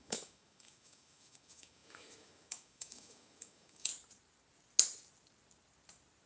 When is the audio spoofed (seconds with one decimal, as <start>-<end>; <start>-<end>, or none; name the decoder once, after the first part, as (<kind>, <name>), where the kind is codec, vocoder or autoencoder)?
0.0-3.9 (autoencoder, DAC-VAE)